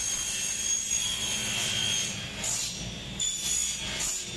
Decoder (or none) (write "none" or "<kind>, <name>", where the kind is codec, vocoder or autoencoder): none